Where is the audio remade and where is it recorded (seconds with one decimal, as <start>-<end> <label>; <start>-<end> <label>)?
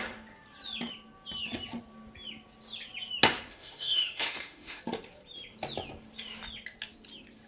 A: 0.0-3.5 recorded; 3.5-4.8 remade; 4.8-7.5 recorded